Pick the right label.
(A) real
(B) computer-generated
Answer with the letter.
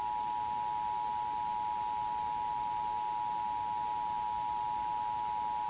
A